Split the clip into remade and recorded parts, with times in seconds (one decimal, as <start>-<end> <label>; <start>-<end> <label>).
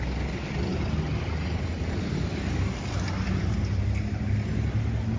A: 0.0-5.2 recorded